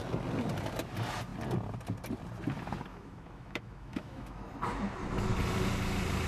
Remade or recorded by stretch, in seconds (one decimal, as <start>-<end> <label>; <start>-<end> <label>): 0.0-2.9 recorded; 2.9-4.4 remade; 4.4-6.3 recorded